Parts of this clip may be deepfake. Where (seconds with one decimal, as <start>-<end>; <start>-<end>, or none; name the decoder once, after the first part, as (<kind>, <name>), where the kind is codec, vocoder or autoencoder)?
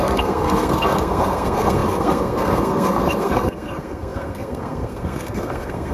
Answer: 0.0-5.9 (codec, SNAC)